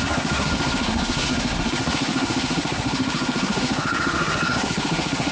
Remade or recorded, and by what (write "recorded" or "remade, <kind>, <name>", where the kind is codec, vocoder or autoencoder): remade, codec, SNAC